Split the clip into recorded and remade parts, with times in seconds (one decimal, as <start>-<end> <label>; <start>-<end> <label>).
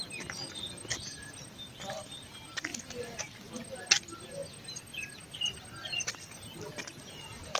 0.0-7.6 recorded